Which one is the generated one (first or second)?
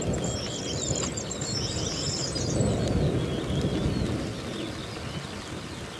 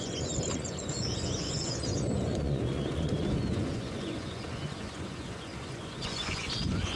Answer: second